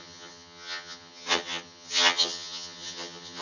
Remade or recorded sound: remade